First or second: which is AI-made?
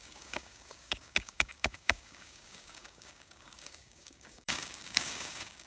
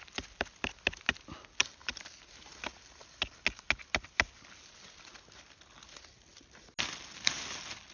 first